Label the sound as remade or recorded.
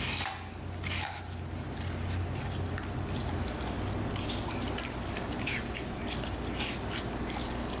recorded